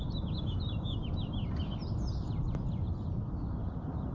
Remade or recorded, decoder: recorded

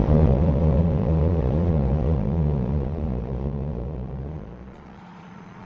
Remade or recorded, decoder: remade, vocoder, Vocos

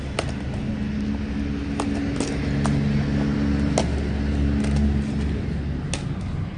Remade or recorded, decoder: recorded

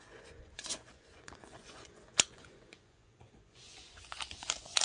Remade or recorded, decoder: remade, vocoder, Vocos